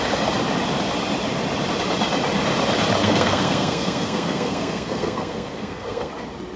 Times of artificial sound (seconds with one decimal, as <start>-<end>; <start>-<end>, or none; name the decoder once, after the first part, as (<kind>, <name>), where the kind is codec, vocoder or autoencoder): 3.0-6.1 (codec, SNAC)